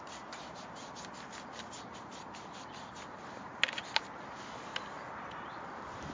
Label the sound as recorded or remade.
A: recorded